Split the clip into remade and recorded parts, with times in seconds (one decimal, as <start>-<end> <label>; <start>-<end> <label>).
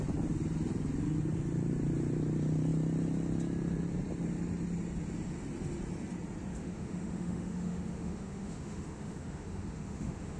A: 0.0-6.5 recorded; 6.5-10.4 remade